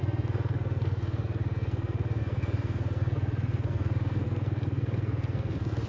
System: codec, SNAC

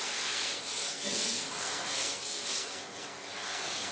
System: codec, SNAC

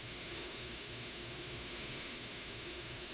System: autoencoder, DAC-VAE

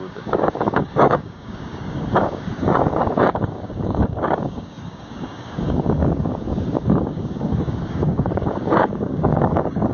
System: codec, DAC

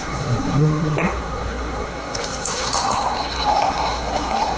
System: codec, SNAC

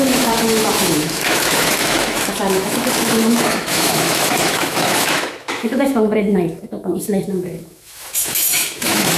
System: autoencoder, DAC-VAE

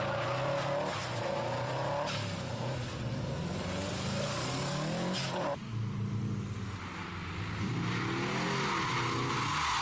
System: none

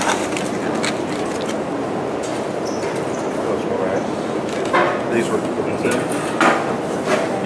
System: none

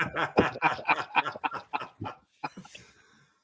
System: none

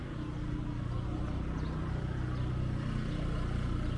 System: none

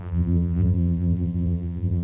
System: vocoder, BigVGAN v2